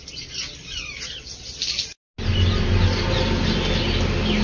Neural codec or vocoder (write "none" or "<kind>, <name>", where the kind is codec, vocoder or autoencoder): none